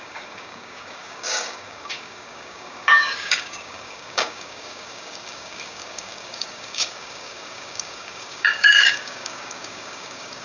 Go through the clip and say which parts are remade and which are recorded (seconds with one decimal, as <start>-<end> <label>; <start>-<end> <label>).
0.0-10.4 remade